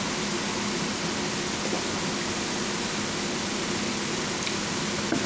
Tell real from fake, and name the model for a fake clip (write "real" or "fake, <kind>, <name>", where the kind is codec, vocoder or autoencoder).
real